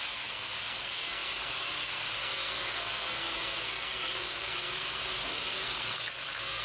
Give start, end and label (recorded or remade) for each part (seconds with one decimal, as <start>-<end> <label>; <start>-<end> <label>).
0.0-5.0 remade; 5.0-5.5 recorded; 5.5-6.6 remade